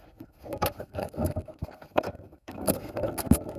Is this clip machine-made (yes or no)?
yes